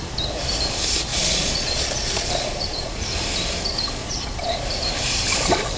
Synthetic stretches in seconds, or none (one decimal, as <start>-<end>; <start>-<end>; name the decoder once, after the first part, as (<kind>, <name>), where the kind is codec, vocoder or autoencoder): 1.1-3.1 (vocoder, Vocos); 4.0-4.6

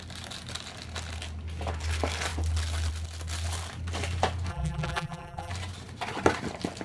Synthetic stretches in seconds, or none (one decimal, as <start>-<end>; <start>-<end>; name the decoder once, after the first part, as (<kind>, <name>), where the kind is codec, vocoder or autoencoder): 4.5-5.5 (vocoder, BigVGAN v2)

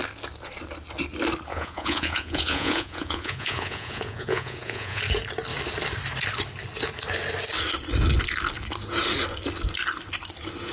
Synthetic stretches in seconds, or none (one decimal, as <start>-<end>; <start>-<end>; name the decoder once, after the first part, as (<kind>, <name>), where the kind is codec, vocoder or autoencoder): 1.5-5.0 (vocoder, Vocos)